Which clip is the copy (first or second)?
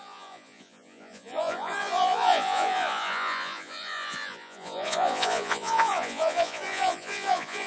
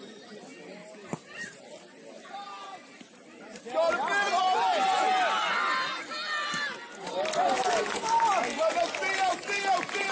first